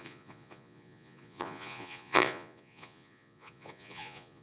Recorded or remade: remade